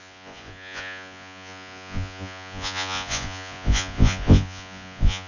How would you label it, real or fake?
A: fake